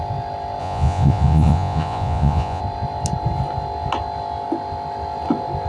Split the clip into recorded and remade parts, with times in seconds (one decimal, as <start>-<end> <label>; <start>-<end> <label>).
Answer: 0.0-0.6 recorded; 0.6-2.6 remade; 2.6-5.7 recorded